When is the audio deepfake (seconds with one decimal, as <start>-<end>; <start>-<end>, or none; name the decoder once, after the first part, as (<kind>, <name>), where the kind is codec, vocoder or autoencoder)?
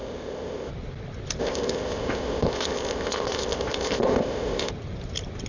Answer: 0.0-0.7 (codec, ZipCodec); 1.4-4.7